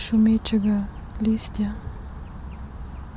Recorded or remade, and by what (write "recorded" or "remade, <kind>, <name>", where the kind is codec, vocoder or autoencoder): recorded